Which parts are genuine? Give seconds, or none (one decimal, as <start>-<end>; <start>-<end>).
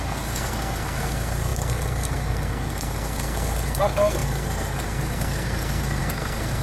none